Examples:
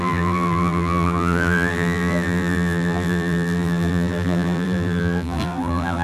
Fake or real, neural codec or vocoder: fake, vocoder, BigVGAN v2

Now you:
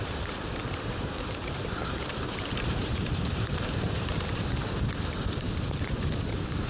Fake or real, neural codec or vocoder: fake, vocoder, BigVGAN v2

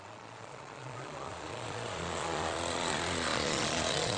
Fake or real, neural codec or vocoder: fake, vocoder, Vocos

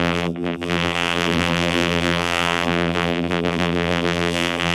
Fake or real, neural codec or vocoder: fake, vocoder, BigVGAN v2